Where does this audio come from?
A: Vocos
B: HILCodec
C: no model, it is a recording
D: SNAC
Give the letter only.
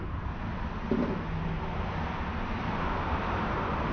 C